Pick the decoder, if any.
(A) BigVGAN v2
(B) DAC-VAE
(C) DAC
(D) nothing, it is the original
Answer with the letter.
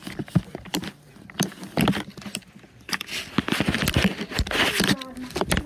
D